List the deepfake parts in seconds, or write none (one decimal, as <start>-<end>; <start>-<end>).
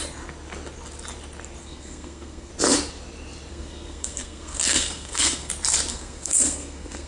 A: 1.6-2.5; 3.5-5.5; 5.9-7.1